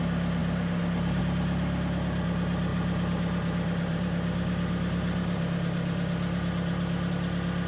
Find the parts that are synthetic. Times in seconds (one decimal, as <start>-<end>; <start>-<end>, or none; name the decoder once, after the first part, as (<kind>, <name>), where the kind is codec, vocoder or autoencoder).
0.4-1.2 (vocoder, BigVGAN v2); 2.7-7.1